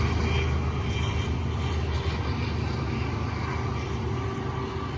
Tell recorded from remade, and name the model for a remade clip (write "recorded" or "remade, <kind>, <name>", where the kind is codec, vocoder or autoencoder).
recorded